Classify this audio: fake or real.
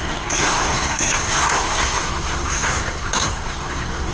fake